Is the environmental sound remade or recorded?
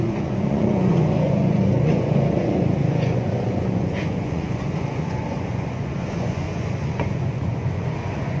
remade